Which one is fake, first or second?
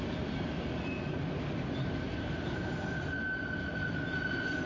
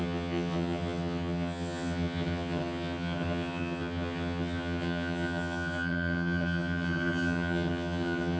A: second